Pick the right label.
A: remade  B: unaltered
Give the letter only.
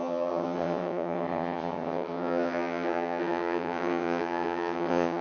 A